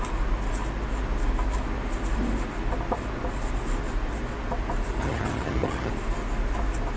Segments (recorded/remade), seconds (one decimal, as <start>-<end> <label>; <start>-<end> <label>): 0.0-5.0 recorded; 5.0-5.9 remade; 5.9-7.0 recorded